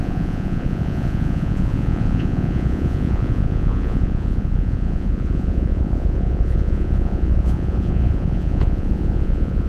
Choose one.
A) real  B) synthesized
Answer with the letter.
B